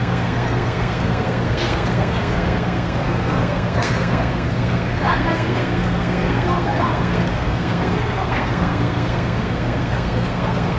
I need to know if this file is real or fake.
fake